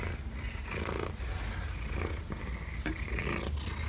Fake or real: real